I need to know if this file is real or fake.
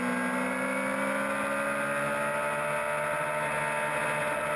real